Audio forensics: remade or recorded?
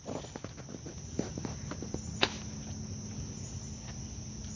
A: recorded